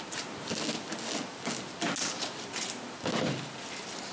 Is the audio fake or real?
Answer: real